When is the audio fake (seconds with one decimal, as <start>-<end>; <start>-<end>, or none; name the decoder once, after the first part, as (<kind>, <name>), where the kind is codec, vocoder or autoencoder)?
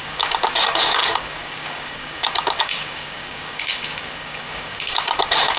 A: 0.0-5.6 (codec, DAC)